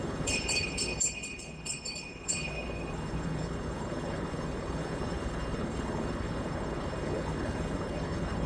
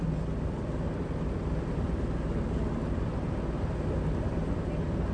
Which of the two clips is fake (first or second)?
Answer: first